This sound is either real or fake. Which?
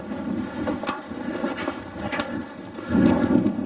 real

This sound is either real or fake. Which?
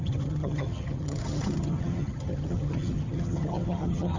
fake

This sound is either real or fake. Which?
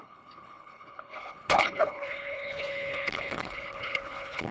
fake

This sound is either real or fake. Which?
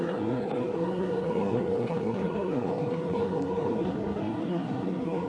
fake